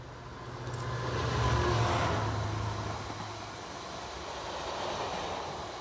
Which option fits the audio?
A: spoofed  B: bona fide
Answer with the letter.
B